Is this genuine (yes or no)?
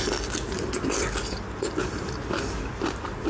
yes